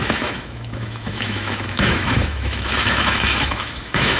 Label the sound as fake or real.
fake